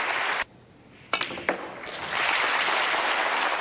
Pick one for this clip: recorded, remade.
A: recorded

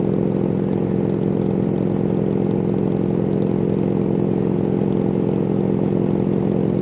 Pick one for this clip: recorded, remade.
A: recorded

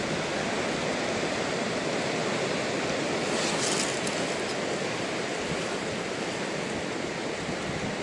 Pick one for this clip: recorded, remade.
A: recorded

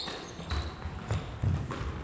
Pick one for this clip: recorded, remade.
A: recorded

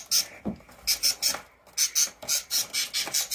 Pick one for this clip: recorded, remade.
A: recorded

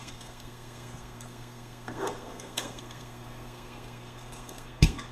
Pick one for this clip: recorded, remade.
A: remade